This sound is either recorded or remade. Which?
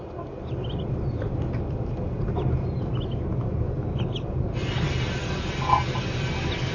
recorded